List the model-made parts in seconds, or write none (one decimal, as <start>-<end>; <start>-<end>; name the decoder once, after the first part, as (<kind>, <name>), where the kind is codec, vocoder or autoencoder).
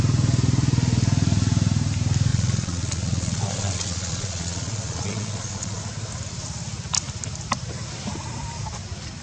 2.3-5.8 (vocoder, Vocos)